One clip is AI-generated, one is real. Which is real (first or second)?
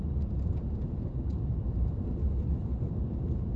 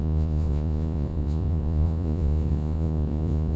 first